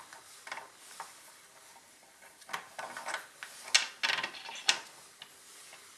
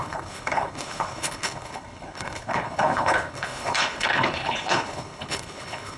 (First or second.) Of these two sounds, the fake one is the second